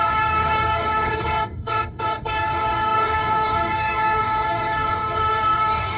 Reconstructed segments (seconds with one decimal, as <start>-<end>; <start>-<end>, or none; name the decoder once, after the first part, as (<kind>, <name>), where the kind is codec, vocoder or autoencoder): 0.0-6.0 (codec, DAC)